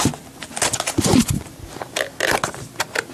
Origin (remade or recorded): recorded